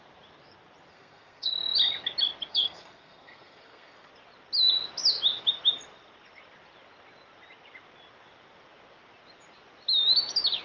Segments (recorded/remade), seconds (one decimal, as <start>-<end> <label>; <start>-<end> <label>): 0.0-0.9 recorded; 0.9-1.5 remade; 1.5-2.5 recorded; 2.5-4.1 remade; 4.1-10.6 recorded